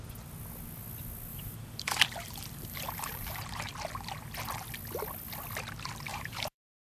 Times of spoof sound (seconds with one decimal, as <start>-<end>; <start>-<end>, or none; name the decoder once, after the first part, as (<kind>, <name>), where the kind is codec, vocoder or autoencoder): 1.3-3.7 (vocoder, BigVGAN v2); 6.1-7.0